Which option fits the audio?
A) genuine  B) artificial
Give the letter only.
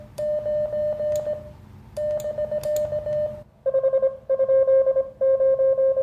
A